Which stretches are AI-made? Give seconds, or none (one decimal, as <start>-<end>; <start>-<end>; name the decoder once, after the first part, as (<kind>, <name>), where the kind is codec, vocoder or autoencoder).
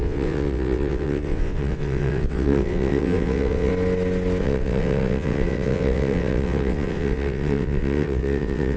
0.0-3.7 (vocoder, WaveNeXt); 4.4-8.8